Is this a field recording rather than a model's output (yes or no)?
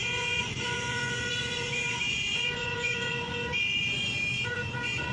no